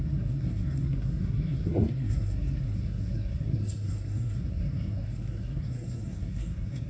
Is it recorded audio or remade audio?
remade